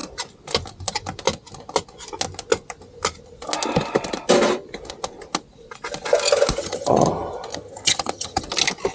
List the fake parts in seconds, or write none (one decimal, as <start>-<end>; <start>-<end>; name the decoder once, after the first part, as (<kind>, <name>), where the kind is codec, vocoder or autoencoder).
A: 6.6-7.1 (vocoder, HiFi-GAN); 7.5-8.4